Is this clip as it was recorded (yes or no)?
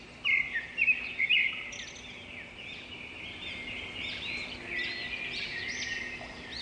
yes